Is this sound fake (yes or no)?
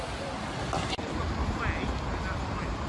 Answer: no